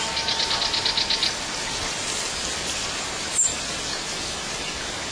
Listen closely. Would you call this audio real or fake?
real